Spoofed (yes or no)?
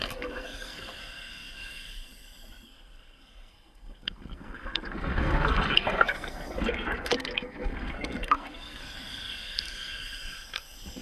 yes